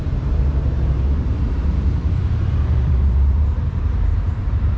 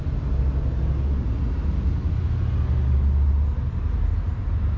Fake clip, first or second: first